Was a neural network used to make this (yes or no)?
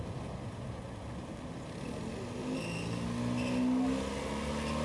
no